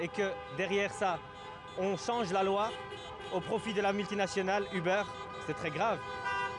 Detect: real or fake real